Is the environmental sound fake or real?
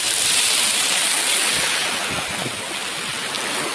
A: fake